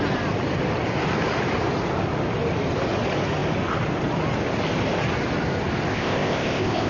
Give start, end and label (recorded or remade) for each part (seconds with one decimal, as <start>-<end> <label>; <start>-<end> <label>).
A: 0.0-5.9 recorded; 5.9-6.9 remade